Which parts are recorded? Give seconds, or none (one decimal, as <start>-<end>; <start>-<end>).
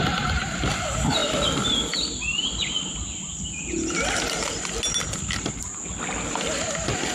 0.0-7.1